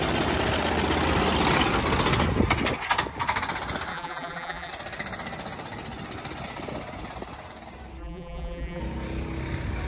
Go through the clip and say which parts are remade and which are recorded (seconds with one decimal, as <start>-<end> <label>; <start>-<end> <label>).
0.0-3.9 recorded; 3.9-4.7 remade; 4.7-8.0 recorded; 8.0-8.8 remade; 8.8-9.9 recorded